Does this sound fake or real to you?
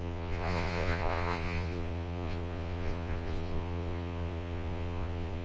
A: fake